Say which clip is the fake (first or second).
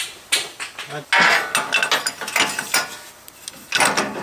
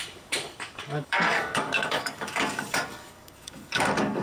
second